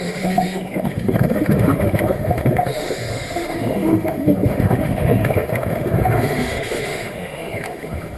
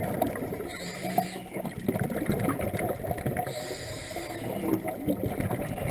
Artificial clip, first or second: first